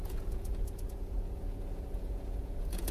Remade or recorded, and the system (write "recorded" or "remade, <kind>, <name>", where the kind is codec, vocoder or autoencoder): remade, vocoder, Vocos